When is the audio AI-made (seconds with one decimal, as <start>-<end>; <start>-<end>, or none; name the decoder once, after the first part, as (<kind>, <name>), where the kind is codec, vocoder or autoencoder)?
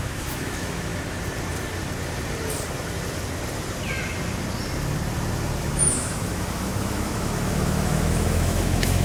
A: 0.0-0.9 (autoencoder, DAC-VAE); 5.6-9.0